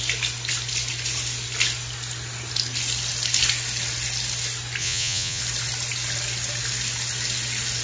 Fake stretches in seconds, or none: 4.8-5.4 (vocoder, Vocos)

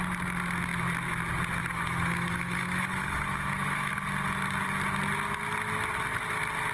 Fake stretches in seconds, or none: 1.6-3.9 (autoencoder, DAC-VAE)

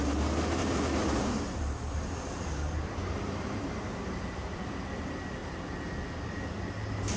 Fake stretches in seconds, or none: 0.6-4.7 (vocoder, BigVGAN v2); 5.4-5.9